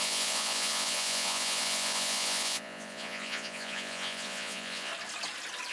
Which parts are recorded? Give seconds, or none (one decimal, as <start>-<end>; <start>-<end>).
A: 4.9-5.7